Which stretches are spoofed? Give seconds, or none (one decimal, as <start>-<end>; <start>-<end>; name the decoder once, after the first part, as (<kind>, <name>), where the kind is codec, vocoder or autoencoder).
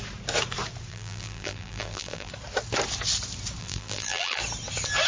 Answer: 0.9-2.3 (vocoder, BigVGAN v2); 3.6-4.4